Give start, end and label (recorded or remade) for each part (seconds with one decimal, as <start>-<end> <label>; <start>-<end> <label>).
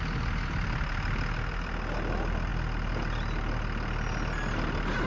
0.0-5.1 recorded